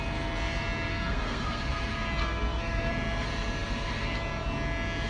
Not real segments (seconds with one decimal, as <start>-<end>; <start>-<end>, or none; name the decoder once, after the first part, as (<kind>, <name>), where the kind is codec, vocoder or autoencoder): 0.9-1.6 (codec, SNAC); 2.2-2.9